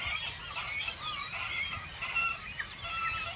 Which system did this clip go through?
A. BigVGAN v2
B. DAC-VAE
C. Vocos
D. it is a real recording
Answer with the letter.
D